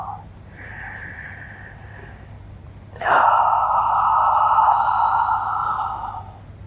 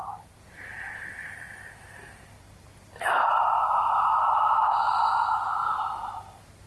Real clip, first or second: first